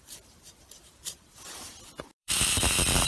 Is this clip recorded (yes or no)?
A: no